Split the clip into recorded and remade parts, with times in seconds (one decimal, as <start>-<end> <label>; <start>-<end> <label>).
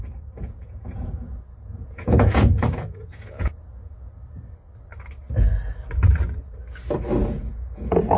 0.0-0.4 recorded; 0.4-4.1 remade; 4.1-7.2 recorded; 7.2-8.2 remade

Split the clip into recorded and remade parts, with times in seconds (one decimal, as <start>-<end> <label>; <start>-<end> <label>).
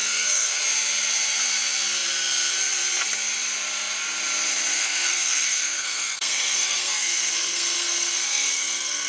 0.0-0.6 remade; 0.6-4.7 recorded; 4.7-9.1 remade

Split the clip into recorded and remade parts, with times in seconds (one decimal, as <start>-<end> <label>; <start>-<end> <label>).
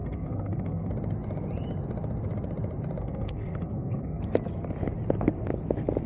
0.0-0.9 remade; 0.9-3.0 recorded; 3.0-4.2 remade; 4.2-6.1 recorded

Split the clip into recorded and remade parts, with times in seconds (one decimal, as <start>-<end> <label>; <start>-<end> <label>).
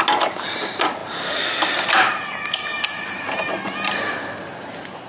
0.0-5.1 recorded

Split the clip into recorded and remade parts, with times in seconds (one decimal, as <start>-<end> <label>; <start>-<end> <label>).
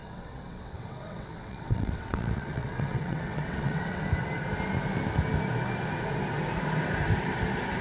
0.0-4.0 remade; 4.0-7.8 recorded